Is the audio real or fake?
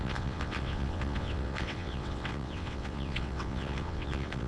fake